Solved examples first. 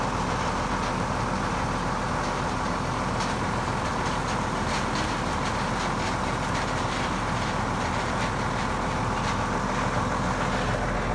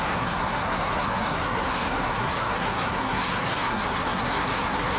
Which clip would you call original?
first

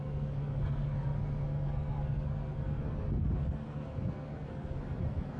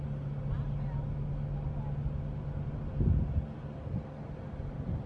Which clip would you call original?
second